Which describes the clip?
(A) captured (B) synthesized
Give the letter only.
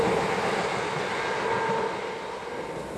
A